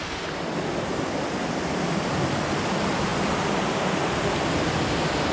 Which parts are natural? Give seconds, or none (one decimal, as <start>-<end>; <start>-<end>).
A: 0.0-3.1; 4.2-5.3